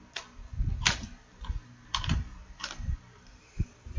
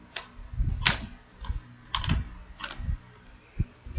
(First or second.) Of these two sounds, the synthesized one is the first